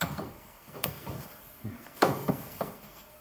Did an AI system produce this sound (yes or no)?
yes